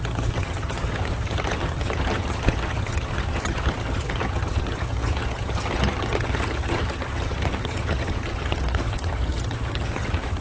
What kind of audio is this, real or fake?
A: fake